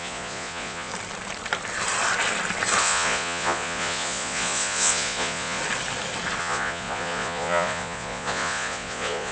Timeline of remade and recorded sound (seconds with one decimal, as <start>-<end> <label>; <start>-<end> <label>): 0.0-0.9 remade; 0.9-2.8 recorded; 2.8-5.6 remade; 5.6-6.4 recorded; 6.4-9.3 remade